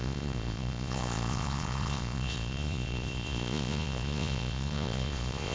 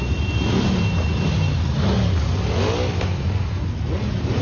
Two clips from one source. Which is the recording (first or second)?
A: second